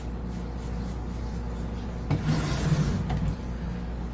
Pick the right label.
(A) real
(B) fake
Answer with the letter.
A